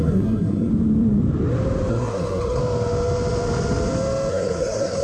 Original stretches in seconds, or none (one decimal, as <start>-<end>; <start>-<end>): 0.7-1.9; 2.6-4.3